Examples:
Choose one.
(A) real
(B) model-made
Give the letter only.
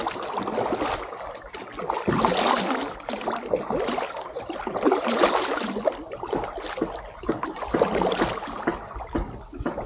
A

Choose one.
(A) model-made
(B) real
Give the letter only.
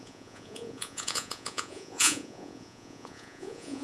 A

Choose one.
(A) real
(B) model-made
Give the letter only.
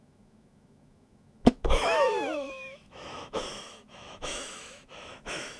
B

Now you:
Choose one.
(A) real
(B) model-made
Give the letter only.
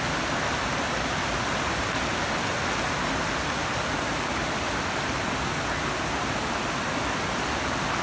A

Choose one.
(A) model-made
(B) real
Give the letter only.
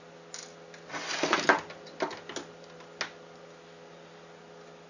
B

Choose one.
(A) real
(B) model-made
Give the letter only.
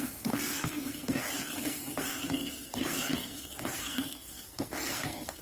B